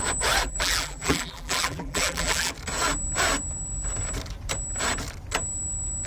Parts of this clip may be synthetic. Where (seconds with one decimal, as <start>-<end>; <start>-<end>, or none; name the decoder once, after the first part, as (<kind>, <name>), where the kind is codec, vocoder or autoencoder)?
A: 0.4-2.5 (vocoder, BigVGAN v2)